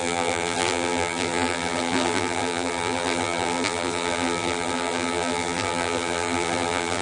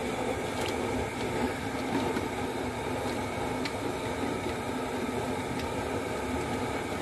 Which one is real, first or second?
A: second